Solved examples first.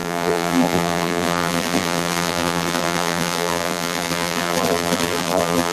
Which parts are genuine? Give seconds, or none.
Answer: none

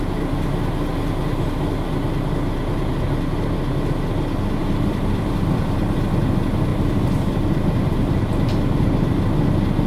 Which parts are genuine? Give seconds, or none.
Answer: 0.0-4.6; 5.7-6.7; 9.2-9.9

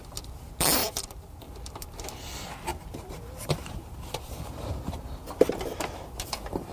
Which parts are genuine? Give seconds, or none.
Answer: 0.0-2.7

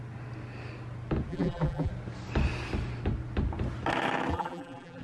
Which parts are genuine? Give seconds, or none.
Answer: 0.0-1.3; 1.9-4.3

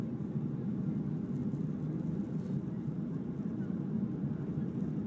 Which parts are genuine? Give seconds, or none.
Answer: 0.0-1.4; 4.5-5.1

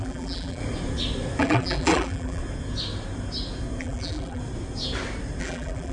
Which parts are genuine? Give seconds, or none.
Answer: 0.6-1.4; 2.4-3.8; 4.4-5.4